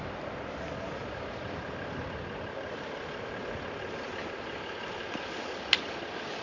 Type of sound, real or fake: real